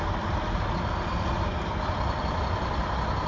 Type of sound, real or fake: real